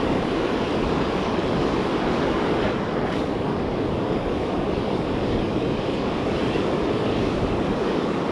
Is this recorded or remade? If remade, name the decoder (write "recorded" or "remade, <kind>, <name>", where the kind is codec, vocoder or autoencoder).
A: remade, codec, DAC